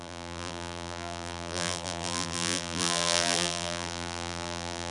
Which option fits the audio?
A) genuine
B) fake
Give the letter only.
B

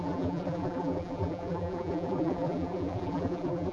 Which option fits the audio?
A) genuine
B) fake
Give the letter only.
B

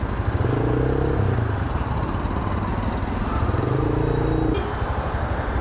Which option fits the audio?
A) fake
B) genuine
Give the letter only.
B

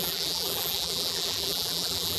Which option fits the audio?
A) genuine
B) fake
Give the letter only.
B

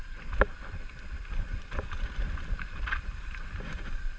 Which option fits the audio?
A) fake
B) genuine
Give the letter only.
A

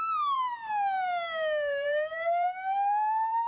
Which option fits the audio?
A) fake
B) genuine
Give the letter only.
A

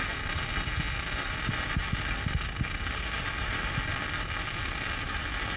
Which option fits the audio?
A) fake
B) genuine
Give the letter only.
B